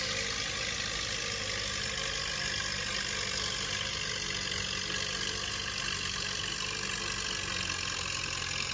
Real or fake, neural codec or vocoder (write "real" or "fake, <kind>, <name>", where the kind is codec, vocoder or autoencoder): real